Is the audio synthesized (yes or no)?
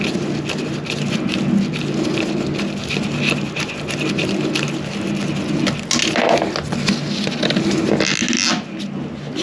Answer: no